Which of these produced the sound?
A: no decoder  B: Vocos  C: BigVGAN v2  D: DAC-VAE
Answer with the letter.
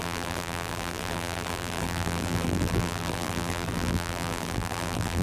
C